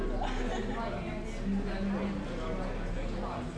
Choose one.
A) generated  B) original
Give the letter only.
B